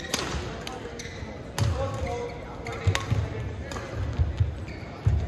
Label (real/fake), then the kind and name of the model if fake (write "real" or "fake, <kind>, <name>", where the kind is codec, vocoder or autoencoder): real